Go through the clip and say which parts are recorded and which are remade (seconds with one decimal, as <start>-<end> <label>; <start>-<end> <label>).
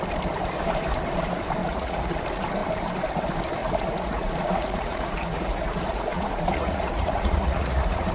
0.0-1.6 recorded; 1.6-2.2 remade; 2.2-3.6 recorded; 3.6-8.1 remade